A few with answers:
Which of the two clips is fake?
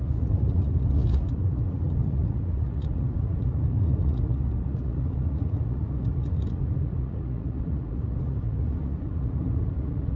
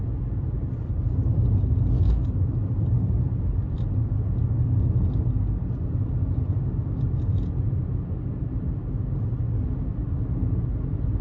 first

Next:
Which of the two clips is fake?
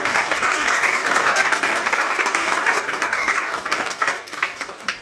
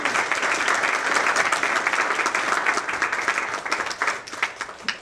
first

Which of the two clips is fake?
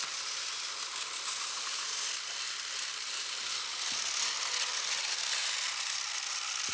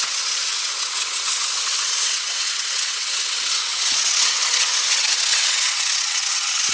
second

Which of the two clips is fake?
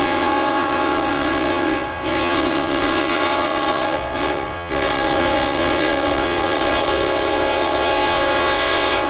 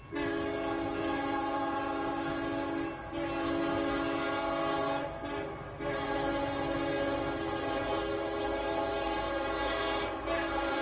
first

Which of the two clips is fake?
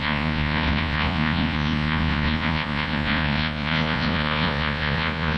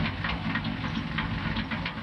first